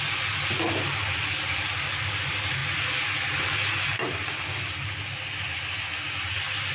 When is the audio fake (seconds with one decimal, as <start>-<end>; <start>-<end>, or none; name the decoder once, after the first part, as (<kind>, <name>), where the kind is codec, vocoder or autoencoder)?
none